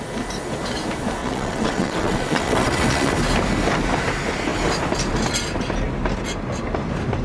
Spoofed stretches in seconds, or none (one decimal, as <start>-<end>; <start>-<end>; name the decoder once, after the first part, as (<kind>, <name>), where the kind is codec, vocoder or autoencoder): 1.2-3.1 (vocoder, WaveNeXt)